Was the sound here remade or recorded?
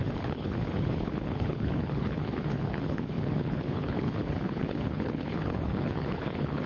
remade